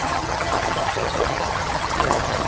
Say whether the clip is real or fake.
fake